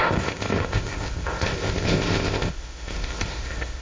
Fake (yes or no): yes